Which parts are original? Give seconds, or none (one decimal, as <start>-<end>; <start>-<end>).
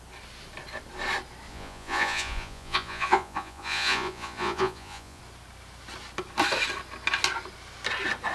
0.0-1.5; 5.2-8.3